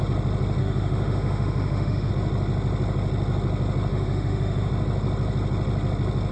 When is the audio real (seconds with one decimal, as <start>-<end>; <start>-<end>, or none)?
0.0-0.6; 2.1-3.9; 4.7-6.3